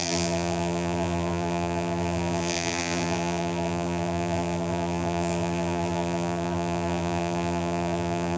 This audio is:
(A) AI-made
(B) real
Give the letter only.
A